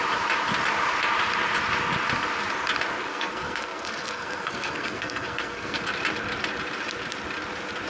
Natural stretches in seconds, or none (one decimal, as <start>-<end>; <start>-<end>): 0.0-3.1; 5.8-7.9